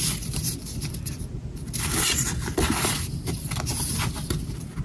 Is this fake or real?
real